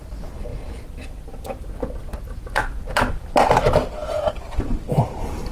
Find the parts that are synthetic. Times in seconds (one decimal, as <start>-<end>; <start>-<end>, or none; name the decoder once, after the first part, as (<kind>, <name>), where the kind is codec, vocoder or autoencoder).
0.0-0.5 (vocoder, BigVGAN v2); 3.1-5.5